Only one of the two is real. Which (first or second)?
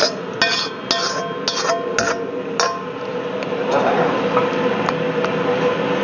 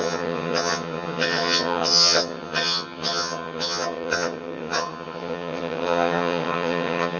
first